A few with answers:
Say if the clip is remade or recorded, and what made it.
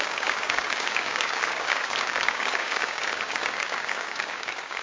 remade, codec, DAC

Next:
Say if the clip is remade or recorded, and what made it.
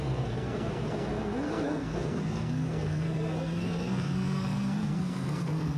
remade, codec, SNAC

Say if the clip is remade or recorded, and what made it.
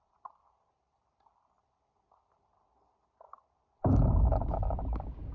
recorded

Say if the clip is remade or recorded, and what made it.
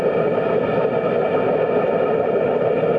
recorded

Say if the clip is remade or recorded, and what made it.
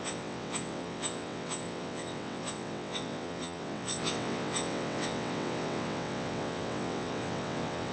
remade, vocoder, WaveNeXt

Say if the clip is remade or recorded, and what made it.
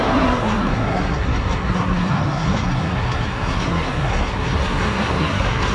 remade, codec, SNAC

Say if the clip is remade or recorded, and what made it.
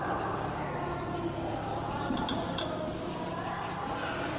recorded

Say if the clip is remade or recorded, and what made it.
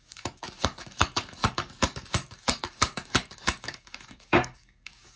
remade, codec, DAC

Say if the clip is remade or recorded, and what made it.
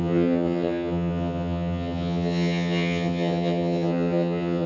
remade, vocoder, HiFi-GAN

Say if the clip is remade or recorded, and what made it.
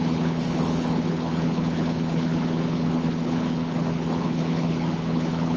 remade, codec, HILCodec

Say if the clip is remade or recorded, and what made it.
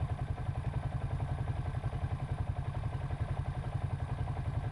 recorded